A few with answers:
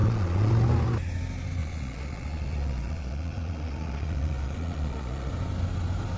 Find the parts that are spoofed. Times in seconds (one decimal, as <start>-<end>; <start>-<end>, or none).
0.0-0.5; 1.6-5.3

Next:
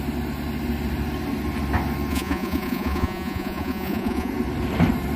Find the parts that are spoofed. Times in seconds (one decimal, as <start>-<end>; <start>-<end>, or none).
2.1-4.3

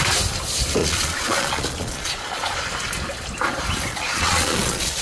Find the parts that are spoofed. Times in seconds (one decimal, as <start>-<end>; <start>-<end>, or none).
0.8-2.7; 3.9-5.0

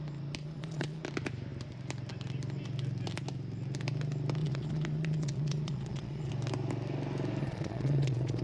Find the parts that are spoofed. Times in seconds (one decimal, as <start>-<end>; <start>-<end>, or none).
0.4-1.0; 4.4-6.3; 7.4-8.4